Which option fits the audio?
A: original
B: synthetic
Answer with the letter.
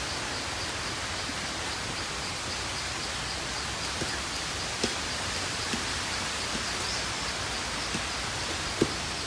A